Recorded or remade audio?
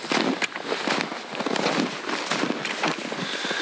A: recorded